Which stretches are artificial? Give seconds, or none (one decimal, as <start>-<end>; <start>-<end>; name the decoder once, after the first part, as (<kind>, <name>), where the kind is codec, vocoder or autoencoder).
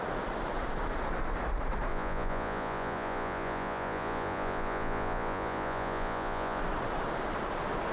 1.9-6.6 (vocoder, Vocos)